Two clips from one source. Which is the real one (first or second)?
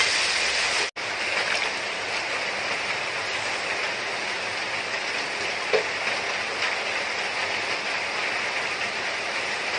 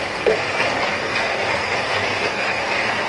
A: first